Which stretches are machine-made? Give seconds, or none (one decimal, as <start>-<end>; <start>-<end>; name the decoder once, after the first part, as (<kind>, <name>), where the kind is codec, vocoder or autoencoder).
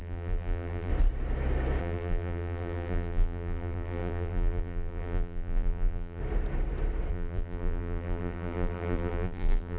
0.0-0.9 (vocoder, BigVGAN v2); 1.8-6.2; 7.1-9.8